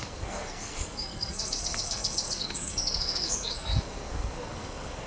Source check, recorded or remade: remade